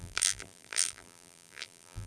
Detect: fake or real fake